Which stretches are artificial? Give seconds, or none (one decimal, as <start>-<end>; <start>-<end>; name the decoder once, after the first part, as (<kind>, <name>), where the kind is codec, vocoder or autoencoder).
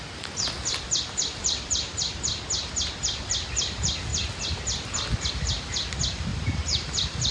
1.4-2.1 (vocoder, BigVGAN v2); 6.3-7.3